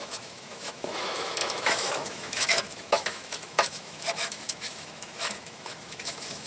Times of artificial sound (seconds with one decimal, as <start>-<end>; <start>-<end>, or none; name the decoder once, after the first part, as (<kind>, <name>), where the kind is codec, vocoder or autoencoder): 0.0-6.5 (autoencoder, DAC-VAE)